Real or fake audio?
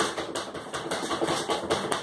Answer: real